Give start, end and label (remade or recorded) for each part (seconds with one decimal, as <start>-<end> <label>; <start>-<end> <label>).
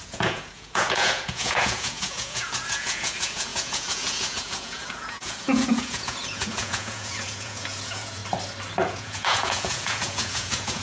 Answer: 0.0-8.2 remade; 8.2-8.9 recorded; 8.9-10.8 remade